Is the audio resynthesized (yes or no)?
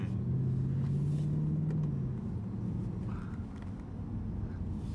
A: no